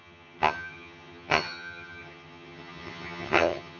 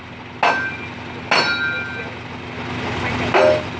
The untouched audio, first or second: second